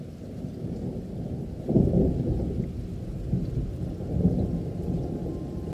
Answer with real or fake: real